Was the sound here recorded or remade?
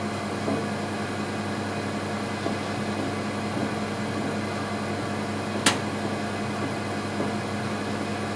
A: recorded